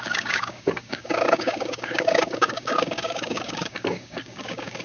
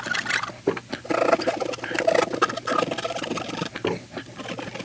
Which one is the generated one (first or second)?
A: first